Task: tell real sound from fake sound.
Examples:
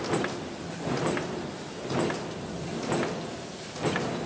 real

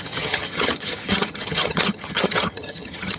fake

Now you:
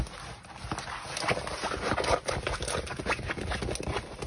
real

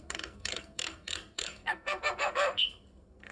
fake